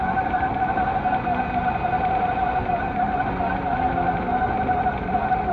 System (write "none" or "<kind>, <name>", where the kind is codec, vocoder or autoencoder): none